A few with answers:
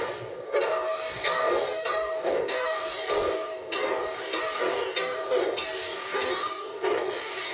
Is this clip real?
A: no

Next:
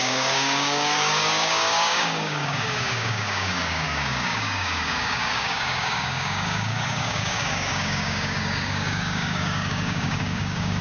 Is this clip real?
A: no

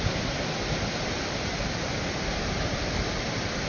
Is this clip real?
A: yes